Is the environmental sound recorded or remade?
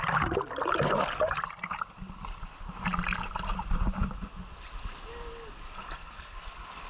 recorded